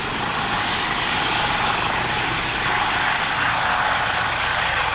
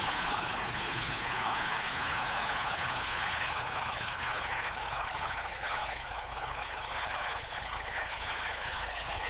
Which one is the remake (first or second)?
second